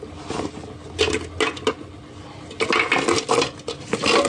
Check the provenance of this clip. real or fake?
real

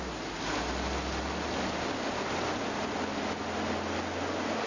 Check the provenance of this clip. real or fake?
real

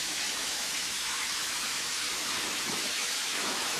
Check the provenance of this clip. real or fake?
fake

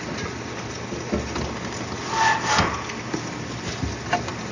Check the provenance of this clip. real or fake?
real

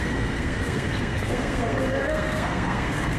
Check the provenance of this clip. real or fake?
fake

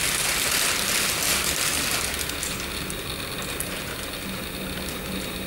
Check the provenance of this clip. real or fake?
real